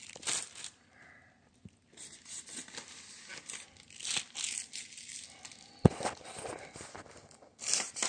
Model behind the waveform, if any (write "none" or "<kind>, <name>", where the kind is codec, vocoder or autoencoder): none